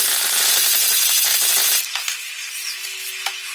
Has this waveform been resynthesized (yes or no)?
no